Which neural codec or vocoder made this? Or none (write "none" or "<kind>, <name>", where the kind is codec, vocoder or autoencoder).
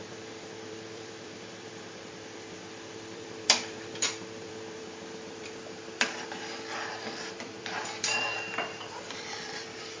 vocoder, BigVGAN v2